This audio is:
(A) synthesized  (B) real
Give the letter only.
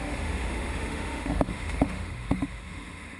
A